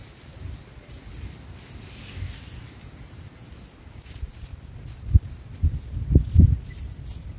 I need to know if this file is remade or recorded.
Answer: recorded